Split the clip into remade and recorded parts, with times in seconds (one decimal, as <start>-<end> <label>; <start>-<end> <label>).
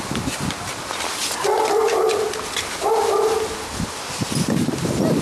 0.0-5.2 recorded